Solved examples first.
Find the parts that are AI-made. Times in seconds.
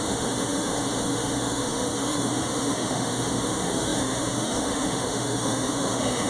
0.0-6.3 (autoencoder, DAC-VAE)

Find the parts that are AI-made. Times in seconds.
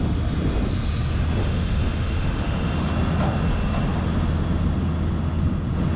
1.4-2.9 (autoencoder, DAC-VAE)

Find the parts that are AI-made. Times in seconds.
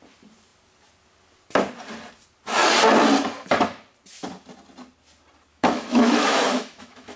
5.5-7.2 (autoencoder, DAC-VAE)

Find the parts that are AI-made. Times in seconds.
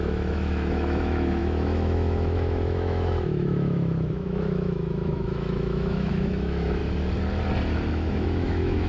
0.0-6.8 (autoencoder, DAC-VAE); 7.9-8.9